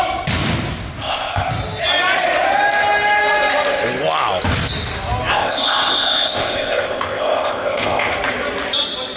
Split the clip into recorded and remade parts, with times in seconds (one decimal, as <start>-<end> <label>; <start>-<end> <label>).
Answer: 0.0-1.0 recorded; 1.0-1.5 remade; 1.5-5.3 recorded; 5.3-8.1 remade; 8.1-9.2 recorded